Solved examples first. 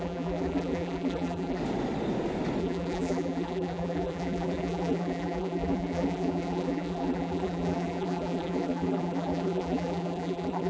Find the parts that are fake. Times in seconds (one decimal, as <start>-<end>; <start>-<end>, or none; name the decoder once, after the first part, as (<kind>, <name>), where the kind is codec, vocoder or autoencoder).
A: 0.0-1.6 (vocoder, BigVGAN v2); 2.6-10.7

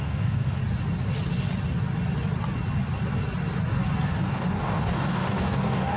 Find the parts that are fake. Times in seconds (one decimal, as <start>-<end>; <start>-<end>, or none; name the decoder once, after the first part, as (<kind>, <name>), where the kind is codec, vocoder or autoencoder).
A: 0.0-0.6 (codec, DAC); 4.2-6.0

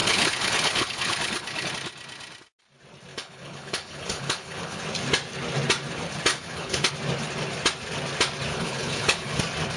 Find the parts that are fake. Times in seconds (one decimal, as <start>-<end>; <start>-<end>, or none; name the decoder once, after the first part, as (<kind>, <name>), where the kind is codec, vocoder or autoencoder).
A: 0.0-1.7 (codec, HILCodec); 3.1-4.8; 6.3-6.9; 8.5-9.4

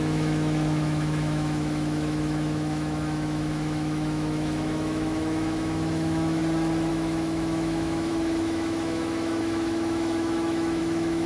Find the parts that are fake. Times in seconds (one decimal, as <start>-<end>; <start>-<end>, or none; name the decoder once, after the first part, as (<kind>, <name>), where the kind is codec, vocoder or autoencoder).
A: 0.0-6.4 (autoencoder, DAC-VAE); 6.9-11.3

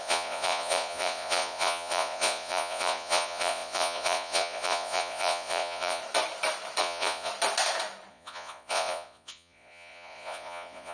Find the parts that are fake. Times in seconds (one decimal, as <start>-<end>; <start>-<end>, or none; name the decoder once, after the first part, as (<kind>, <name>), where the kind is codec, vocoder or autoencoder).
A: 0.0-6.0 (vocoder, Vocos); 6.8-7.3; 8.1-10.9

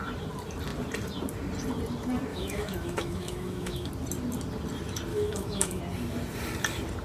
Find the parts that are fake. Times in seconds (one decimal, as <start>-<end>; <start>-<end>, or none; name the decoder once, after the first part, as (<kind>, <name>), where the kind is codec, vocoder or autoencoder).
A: 2.3-3.9 (autoencoder, DAC-VAE); 5.1-5.8